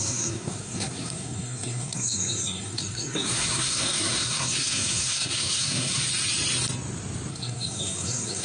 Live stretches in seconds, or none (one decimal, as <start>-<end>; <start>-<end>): 6.0-7.3

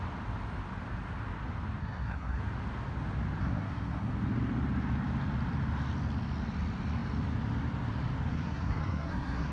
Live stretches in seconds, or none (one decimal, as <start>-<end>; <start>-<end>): 0.0-1.8; 2.4-3.4; 4.1-8.3

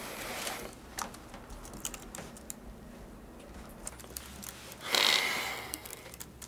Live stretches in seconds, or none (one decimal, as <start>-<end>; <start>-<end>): 0.0-5.5; 6.0-6.5